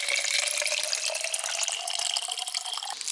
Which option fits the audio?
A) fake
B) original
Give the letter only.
B